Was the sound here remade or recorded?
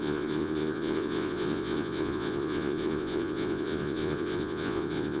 remade